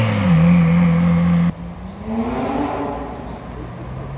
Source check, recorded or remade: recorded